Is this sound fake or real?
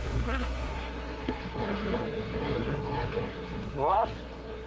fake